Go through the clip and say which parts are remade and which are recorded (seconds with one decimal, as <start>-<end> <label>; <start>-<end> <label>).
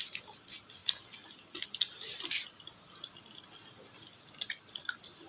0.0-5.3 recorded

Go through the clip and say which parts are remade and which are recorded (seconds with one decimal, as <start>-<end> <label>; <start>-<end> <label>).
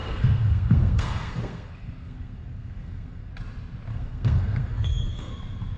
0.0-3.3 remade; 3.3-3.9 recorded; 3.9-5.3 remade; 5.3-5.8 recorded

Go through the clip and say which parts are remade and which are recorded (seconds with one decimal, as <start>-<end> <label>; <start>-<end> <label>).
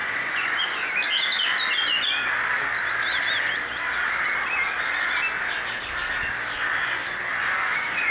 0.0-0.9 remade; 0.9-7.4 recorded; 7.4-8.1 remade